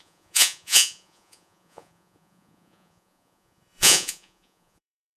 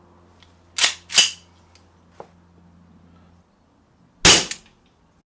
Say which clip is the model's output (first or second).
first